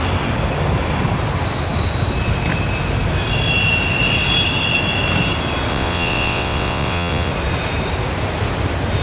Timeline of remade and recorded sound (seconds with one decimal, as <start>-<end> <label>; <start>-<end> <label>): 0.0-5.7 recorded; 5.7-7.3 remade; 7.3-9.0 recorded